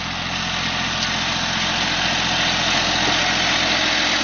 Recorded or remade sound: recorded